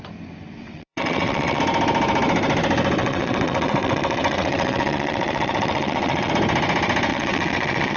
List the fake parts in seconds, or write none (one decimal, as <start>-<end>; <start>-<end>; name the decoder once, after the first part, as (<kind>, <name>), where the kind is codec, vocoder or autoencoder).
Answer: 0.5-1.6 (vocoder, WaveNeXt); 3.0-6.3; 7.1-8.0